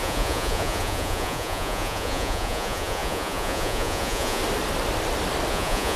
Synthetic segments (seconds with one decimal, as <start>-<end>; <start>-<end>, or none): 0.0-4.4; 5.5-6.0